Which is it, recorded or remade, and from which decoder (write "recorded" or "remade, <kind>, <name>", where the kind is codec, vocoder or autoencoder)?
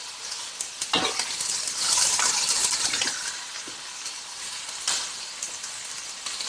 recorded